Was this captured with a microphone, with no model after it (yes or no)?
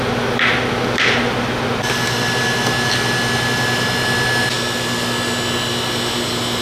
yes